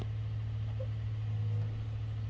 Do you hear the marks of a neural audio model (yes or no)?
no